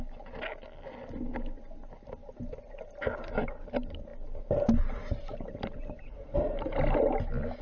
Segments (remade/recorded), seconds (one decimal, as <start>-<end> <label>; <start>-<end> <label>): 0.0-7.6 recorded